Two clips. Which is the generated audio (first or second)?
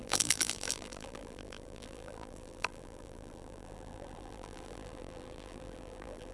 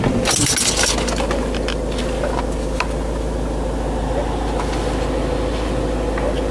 first